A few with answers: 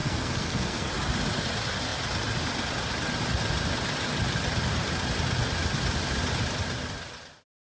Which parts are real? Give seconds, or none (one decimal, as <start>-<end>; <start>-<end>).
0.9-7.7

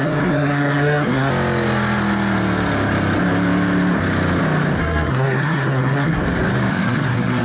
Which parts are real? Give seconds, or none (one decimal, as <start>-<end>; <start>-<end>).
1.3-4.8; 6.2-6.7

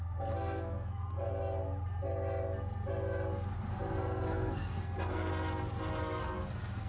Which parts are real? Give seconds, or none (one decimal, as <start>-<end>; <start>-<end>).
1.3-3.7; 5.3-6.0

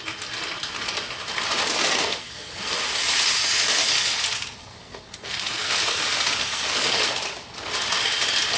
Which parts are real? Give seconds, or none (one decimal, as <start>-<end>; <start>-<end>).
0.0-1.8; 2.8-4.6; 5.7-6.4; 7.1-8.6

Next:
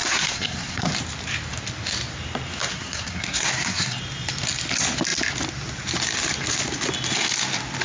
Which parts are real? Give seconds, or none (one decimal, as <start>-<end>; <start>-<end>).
0.9-2.7; 4.0-7.8